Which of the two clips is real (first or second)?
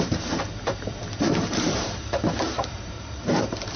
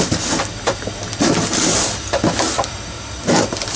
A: second